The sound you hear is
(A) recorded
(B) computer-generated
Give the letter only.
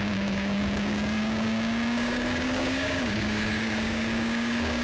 B